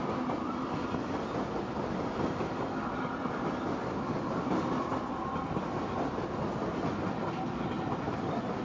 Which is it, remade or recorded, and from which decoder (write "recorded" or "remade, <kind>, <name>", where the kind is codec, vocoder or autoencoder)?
recorded